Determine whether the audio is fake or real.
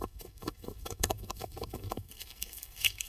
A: fake